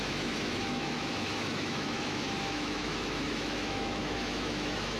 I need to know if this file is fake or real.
fake